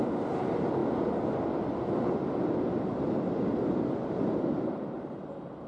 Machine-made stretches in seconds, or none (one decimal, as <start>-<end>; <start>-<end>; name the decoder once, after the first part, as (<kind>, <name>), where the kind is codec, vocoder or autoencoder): none